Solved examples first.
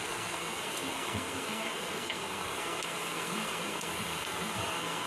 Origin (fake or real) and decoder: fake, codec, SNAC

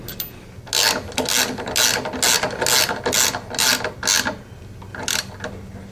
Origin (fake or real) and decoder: real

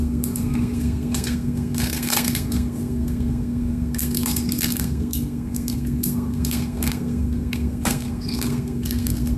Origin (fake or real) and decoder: fake, codec, SNAC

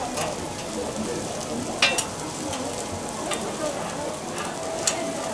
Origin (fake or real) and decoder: real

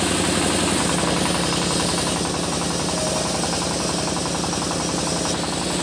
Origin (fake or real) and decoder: real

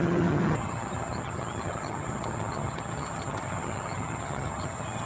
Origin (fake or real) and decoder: fake, vocoder, HiFi-GAN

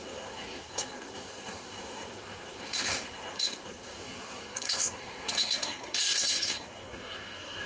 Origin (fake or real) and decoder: fake, codec, SNAC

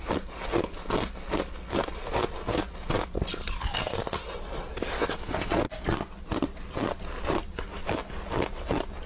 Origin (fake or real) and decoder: real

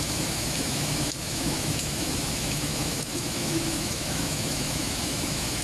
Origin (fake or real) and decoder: fake, autoencoder, DAC-VAE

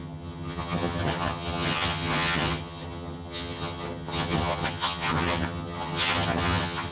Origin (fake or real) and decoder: fake, vocoder, HiFi-GAN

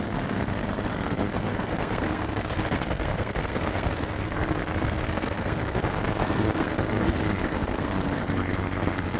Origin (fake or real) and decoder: fake, codec, SNAC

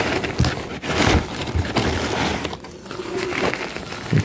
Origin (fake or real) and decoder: real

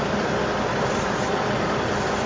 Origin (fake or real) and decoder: fake, vocoder, BigVGAN v2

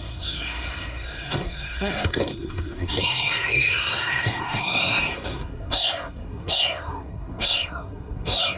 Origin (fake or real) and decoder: fake, codec, SNAC